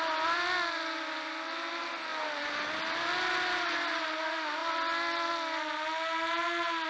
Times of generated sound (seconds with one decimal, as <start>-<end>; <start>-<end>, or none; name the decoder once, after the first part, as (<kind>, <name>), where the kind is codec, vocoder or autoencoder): none